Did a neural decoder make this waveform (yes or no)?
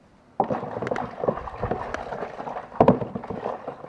no